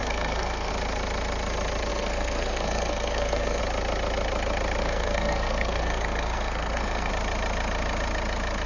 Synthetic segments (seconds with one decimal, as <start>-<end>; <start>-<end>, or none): 0.0-0.7; 1.9-3.6; 4.8-7.1